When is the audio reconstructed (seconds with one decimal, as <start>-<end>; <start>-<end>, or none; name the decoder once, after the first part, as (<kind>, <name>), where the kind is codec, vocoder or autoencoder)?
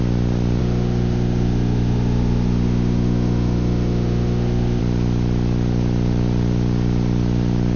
0.6-4.8 (autoencoder, DAC-VAE)